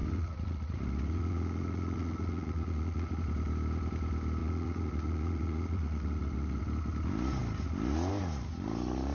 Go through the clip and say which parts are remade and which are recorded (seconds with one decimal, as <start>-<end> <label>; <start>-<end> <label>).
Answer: 0.0-3.2 remade; 3.2-4.4 recorded; 4.4-6.6 remade; 6.6-9.1 recorded